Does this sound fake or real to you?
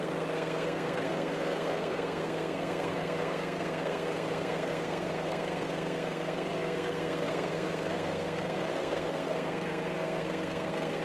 fake